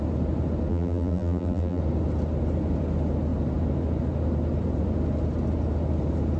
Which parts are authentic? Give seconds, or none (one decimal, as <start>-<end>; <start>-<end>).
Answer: 0.0-0.7; 1.8-6.4